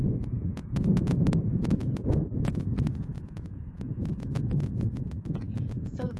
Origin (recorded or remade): remade